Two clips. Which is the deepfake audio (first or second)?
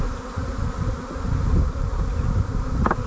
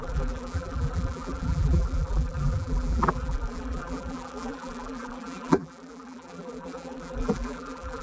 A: second